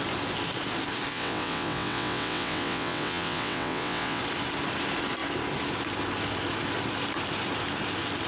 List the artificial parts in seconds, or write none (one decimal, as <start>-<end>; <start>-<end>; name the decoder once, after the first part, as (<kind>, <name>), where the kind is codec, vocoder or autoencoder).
1.1-4.2 (vocoder, WaveNeXt)